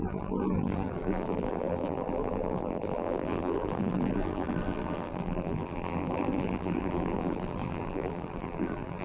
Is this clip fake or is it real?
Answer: fake